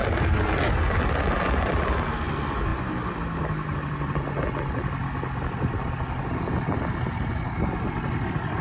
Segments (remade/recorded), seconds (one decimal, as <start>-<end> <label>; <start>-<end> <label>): 0.0-8.6 recorded